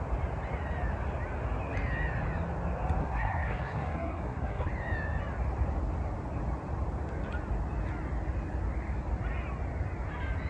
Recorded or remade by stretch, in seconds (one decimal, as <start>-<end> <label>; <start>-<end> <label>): 0.0-3.0 recorded; 3.0-4.7 remade; 4.7-10.5 recorded